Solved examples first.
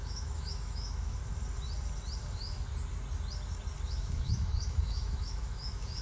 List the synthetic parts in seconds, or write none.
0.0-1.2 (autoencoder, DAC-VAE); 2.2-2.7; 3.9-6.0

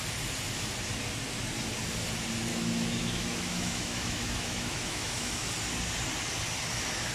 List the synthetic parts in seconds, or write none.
2.5-5.5 (autoencoder, DAC-VAE)

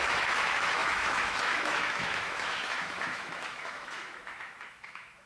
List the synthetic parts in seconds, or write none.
0.0-5.3 (autoencoder, DAC-VAE)